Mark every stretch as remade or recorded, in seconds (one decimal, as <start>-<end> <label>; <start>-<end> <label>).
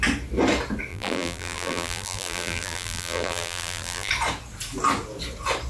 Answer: 0.0-0.9 recorded; 0.9-4.1 remade; 4.1-5.7 recorded